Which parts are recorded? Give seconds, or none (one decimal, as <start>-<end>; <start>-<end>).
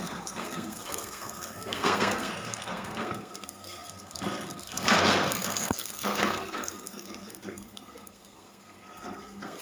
none